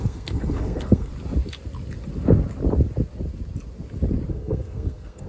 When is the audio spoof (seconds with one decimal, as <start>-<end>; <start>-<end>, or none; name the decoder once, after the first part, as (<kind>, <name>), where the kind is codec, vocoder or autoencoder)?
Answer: 0.0-1.1 (codec, SNAC); 4.3-5.3